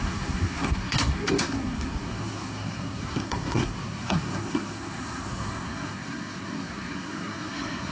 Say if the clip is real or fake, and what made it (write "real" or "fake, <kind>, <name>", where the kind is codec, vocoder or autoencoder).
fake, codec, SNAC